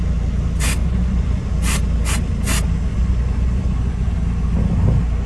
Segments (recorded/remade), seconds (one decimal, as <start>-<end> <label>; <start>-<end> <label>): 0.0-0.8 recorded; 0.8-1.5 remade; 1.5-2.9 recorded; 2.9-4.1 remade; 4.1-5.3 recorded